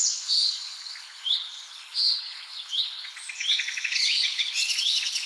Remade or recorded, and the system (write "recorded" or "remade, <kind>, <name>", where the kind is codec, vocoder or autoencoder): remade, codec, HILCodec